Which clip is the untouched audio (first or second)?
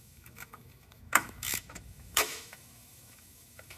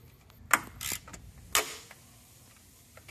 second